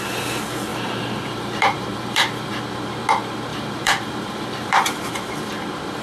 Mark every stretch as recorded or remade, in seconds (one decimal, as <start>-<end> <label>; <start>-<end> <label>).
0.0-0.7 recorded; 0.7-2.6 remade; 2.6-3.5 recorded; 3.5-5.1 remade; 5.1-6.0 recorded